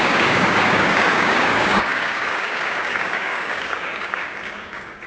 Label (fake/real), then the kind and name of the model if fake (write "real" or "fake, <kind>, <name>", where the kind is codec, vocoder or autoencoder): fake, codec, DAC